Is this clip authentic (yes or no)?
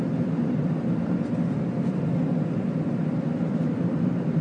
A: no